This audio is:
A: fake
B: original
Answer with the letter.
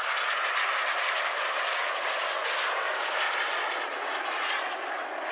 B